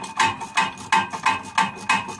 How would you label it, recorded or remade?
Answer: recorded